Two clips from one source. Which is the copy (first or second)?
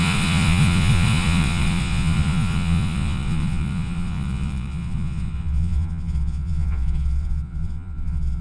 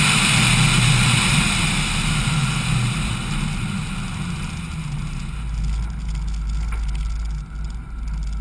first